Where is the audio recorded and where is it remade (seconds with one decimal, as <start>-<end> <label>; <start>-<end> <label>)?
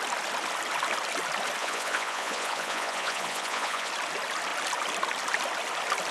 0.0-1.6 recorded; 1.6-3.9 remade; 3.9-6.1 recorded